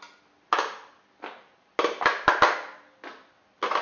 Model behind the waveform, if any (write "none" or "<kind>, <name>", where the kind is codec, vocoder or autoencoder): none